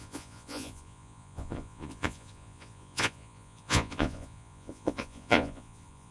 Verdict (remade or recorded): remade